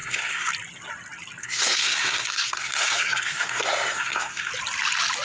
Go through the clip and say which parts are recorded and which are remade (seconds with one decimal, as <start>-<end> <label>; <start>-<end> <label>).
0.0-0.5 remade; 0.5-1.4 recorded; 1.4-4.5 remade; 4.5-5.2 recorded